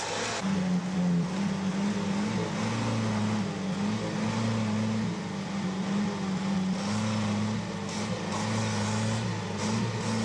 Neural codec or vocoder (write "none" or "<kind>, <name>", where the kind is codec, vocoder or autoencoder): none